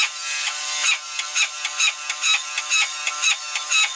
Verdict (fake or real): real